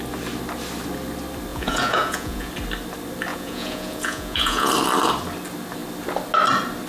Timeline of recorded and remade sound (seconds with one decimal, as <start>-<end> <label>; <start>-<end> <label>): 0.0-1.5 recorded; 1.5-2.5 remade; 2.5-3.3 recorded; 3.3-4.7 remade; 4.7-6.9 recorded